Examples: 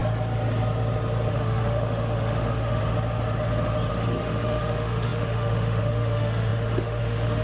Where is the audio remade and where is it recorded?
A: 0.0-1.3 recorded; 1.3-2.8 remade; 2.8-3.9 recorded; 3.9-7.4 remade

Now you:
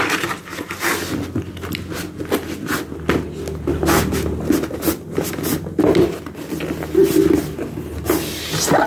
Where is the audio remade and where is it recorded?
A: 0.0-8.9 recorded

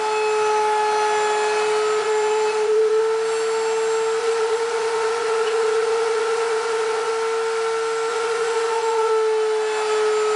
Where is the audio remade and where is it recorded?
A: 0.0-2.0 recorded; 2.0-3.0 remade; 3.0-4.2 recorded; 4.2-7.1 remade; 7.1-8.1 recorded; 8.1-9.1 remade; 9.1-10.4 recorded

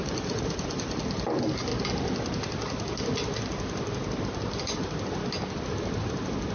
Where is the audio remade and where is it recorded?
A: 0.0-1.7 remade; 1.7-4.2 recorded; 4.2-5.2 remade; 5.2-5.7 recorded; 5.7-6.5 remade

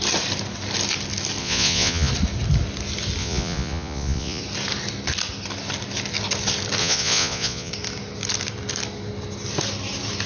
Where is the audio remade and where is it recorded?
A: 0.0-1.4 recorded; 1.4-2.1 remade; 2.1-3.2 recorded; 3.2-4.4 remade; 4.4-6.8 recorded; 6.8-7.7 remade; 7.7-10.3 recorded